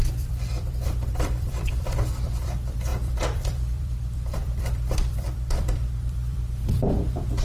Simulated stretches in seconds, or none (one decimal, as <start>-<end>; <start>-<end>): 0.0-7.4